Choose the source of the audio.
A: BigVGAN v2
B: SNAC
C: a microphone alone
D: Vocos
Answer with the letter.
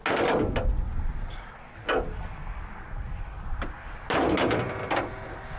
C